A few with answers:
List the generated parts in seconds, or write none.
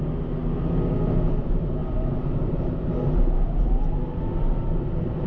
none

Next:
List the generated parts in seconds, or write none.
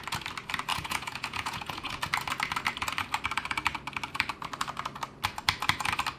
0.7-2.0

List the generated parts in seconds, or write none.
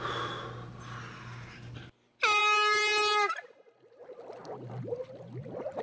none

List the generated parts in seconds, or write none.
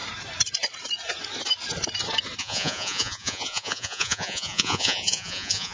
2.4-5.7